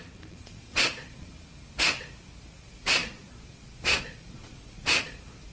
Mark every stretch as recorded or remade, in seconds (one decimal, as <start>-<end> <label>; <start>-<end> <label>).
0.0-1.3 remade; 1.3-2.6 recorded; 2.6-5.5 remade